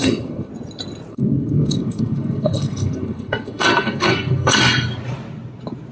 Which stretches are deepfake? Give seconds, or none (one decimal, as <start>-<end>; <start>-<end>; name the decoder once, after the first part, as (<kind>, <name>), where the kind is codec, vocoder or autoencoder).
0.0-0.5 (codec, SNAC); 1.1-4.6